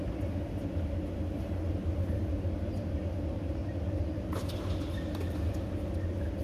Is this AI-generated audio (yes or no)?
no